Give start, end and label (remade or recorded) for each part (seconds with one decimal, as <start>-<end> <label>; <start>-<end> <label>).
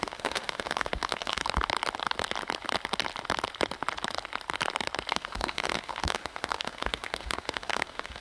0.0-1.4 remade; 1.4-5.1 recorded; 5.1-8.2 remade